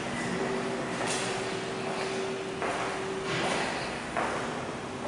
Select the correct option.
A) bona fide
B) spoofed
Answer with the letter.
A